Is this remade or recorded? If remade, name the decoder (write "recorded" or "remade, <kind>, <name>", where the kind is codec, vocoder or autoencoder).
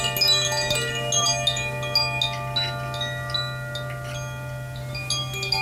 recorded